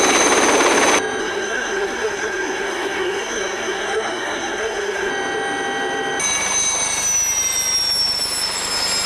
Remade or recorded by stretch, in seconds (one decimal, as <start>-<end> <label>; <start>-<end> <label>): 0.0-1.2 recorded; 1.2-5.1 remade; 5.1-9.1 recorded